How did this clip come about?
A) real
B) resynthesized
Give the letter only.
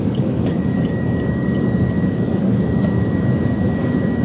B